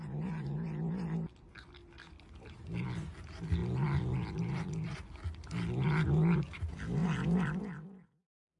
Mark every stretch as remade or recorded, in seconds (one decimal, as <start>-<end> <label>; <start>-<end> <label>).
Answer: 0.0-7.0 recorded; 7.0-7.6 remade; 7.6-8.6 recorded